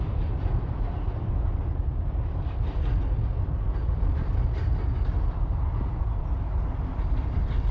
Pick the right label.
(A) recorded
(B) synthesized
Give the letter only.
A